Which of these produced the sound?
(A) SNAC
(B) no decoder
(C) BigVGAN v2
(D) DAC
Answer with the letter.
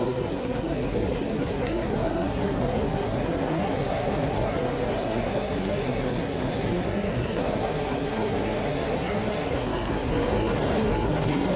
A